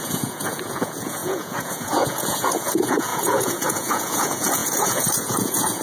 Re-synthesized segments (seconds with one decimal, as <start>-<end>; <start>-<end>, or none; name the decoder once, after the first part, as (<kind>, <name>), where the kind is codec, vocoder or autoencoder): 0.0-5.8 (vocoder, Vocos)